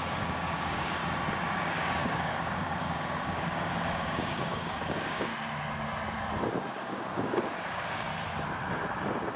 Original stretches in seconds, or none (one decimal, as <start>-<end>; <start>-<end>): 1.0-1.6; 5.3-6.7; 8.1-9.4